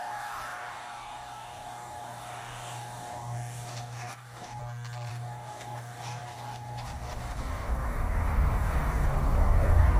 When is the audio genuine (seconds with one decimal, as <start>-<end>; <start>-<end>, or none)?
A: 4.6-5.1